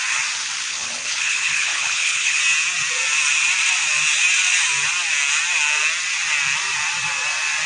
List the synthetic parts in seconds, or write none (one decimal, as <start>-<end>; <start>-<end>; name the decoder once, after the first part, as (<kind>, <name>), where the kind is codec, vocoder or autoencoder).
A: 0.7-2.4 (codec, HILCodec)